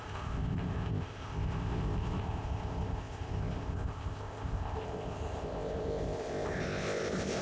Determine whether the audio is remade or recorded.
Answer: remade